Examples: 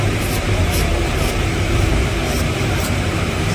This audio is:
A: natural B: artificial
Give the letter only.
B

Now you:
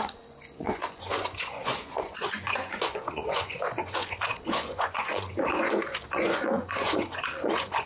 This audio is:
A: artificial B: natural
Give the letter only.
A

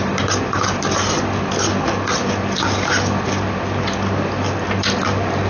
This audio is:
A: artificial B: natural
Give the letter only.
A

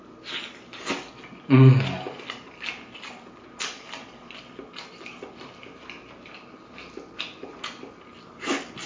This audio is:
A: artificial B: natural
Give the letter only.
B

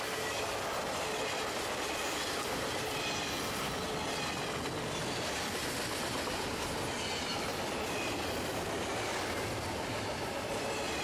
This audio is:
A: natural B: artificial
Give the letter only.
A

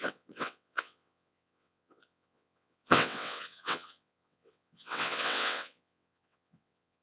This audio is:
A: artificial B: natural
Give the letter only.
A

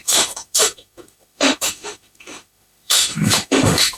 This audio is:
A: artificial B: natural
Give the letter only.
A